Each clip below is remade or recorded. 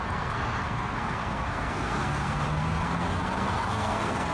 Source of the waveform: remade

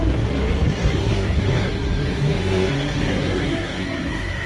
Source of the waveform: remade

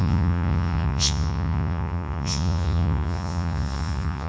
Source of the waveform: remade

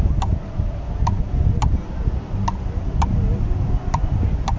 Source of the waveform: recorded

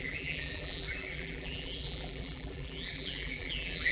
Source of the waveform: remade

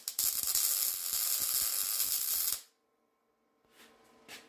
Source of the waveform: recorded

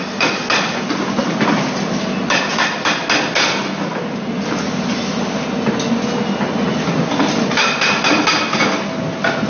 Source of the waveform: recorded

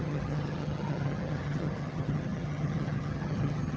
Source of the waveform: remade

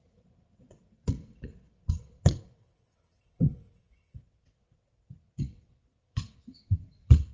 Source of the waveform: remade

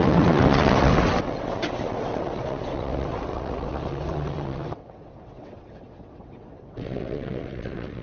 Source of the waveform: remade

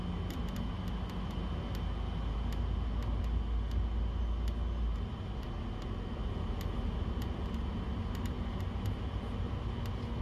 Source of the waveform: recorded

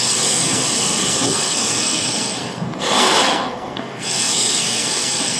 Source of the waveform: remade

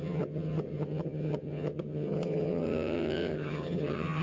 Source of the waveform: remade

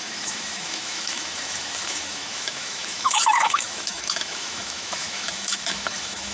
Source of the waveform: remade